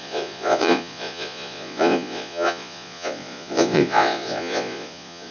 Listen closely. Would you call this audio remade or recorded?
remade